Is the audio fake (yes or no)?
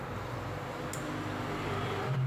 no